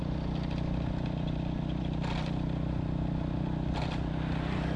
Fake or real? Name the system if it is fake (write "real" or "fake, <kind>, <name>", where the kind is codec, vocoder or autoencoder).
real